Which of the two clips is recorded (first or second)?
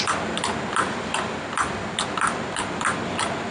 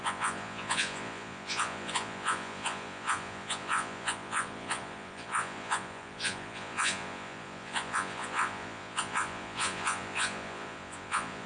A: first